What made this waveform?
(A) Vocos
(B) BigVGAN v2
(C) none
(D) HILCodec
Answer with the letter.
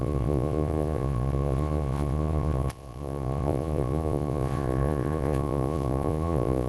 A